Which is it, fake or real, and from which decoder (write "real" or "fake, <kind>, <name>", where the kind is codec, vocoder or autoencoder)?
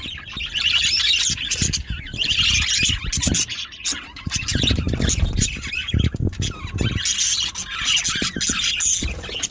real